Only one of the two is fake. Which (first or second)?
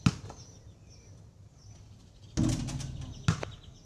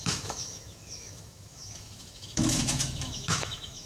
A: second